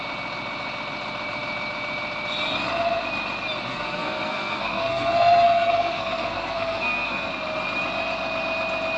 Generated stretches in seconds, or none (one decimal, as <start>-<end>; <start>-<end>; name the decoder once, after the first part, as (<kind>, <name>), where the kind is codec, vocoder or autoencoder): 3.7-7.3 (codec, SNAC)